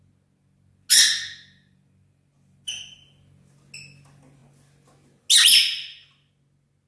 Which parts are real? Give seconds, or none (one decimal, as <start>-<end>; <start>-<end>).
0.0-6.9